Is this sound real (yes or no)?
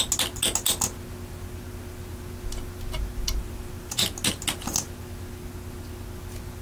yes